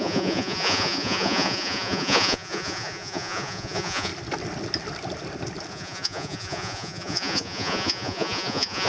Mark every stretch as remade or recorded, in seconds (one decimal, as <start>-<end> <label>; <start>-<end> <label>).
0.0-4.1 remade; 4.1-5.7 recorded; 5.7-8.9 remade